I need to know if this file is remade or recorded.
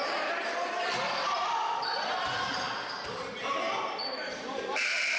remade